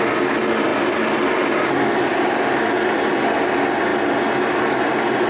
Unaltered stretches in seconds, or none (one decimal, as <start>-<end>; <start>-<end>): 0.0-5.3